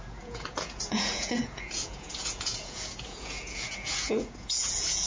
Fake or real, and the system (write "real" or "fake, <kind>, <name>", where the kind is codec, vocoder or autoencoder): fake, vocoder, Vocos